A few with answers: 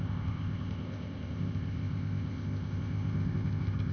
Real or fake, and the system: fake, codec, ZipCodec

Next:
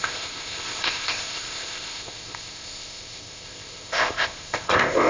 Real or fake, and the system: fake, codec, ZipCodec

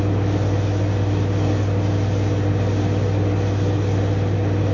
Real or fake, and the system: real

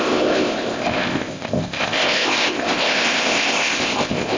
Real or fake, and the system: fake, codec, ZipCodec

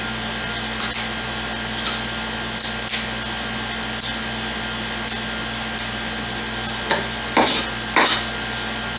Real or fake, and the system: real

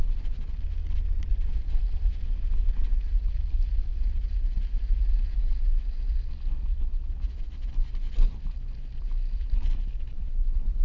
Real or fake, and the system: real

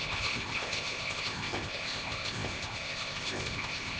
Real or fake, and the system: fake, codec, ZipCodec